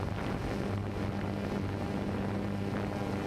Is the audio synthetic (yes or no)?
no